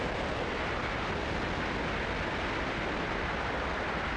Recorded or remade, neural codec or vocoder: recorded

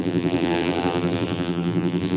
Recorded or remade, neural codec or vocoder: remade, vocoder, BigVGAN v2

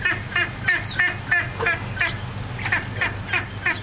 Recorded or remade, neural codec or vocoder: recorded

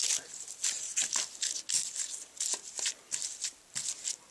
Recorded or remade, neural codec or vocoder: recorded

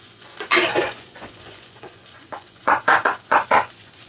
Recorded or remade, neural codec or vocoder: remade, vocoder, Vocos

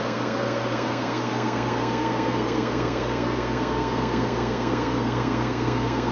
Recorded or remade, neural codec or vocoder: remade, codec, SNAC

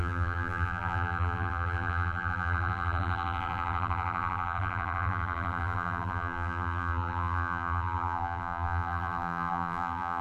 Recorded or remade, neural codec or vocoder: remade, vocoder, BigVGAN v2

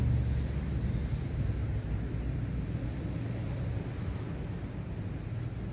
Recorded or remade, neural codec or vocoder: recorded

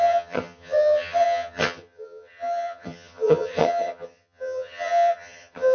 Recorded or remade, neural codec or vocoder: remade, vocoder, HiFi-GAN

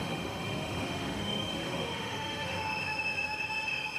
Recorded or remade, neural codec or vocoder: remade, autoencoder, DAC-VAE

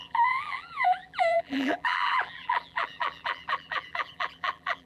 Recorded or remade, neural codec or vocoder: remade, vocoder, BigVGAN v2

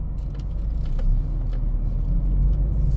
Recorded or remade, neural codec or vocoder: recorded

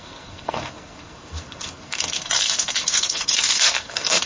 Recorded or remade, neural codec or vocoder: remade, codec, SNAC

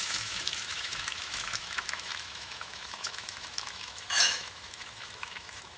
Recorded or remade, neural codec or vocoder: remade, autoencoder, DAC-VAE